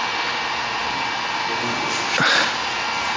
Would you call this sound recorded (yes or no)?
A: yes